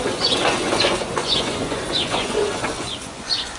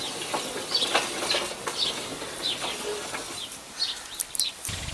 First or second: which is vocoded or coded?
first